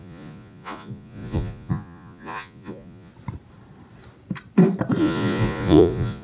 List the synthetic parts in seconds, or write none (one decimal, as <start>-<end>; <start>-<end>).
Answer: 0.0-3.1; 5.0-6.2